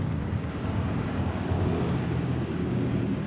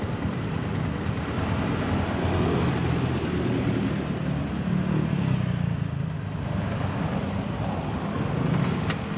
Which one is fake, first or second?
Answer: first